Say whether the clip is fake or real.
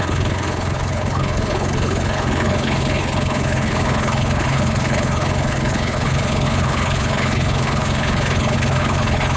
fake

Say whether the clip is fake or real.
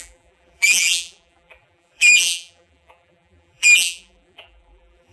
fake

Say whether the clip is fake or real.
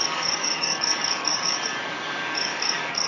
fake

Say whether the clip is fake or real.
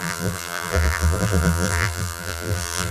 fake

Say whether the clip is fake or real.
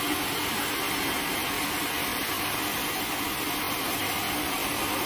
real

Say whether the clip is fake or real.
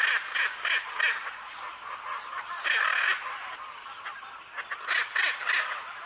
real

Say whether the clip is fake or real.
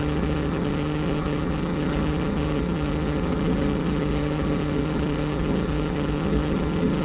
fake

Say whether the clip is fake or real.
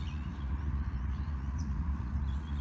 fake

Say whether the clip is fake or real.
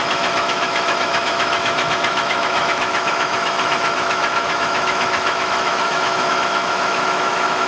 fake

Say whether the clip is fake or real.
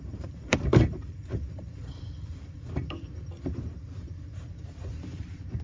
fake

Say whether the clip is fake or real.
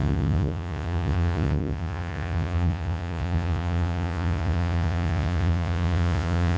fake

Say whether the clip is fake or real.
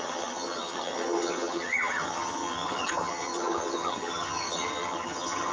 fake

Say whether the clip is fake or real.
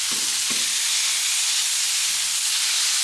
real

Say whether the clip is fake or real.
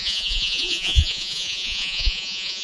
fake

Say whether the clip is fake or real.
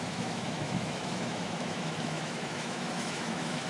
fake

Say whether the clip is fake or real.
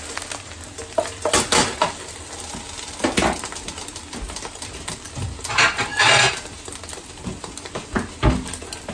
real